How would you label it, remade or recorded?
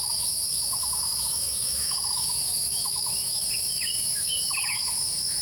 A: remade